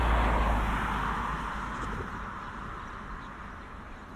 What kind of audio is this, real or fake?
real